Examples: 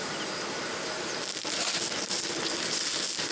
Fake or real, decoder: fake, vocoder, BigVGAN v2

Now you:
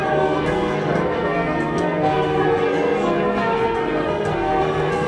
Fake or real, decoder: fake, codec, SNAC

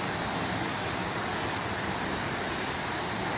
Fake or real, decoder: real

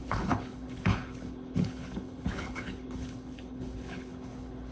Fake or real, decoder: fake, codec, HILCodec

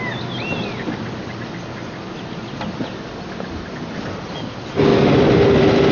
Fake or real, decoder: real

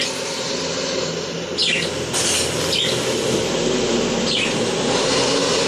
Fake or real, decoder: fake, vocoder, BigVGAN v2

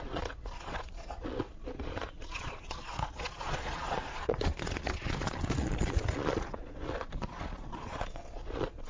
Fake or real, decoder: fake, vocoder, Vocos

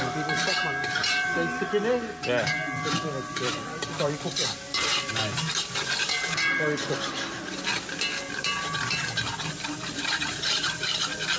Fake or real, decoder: fake, vocoder, BigVGAN v2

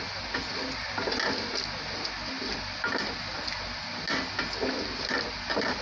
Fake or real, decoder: real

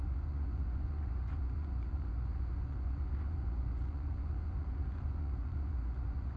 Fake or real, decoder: fake, vocoder, Vocos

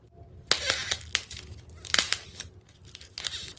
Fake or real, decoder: real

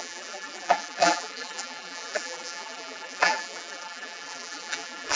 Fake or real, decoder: fake, vocoder, BigVGAN v2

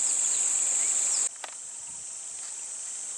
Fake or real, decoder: real